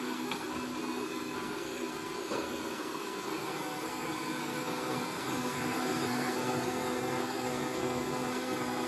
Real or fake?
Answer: fake